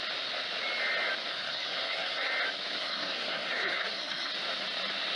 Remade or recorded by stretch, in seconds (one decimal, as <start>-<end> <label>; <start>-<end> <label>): 0.0-1.3 recorded; 1.3-2.3 remade; 2.3-2.8 recorded; 2.8-4.3 remade; 4.3-5.2 recorded